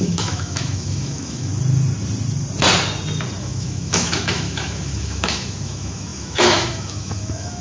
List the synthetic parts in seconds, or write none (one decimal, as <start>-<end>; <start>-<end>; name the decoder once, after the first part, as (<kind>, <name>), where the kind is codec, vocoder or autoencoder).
0.0-1.5 (autoencoder, DAC-VAE); 3.4-7.6